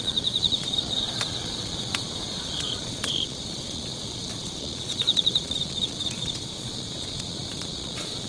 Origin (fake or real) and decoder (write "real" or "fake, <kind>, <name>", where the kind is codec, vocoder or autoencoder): fake, vocoder, Vocos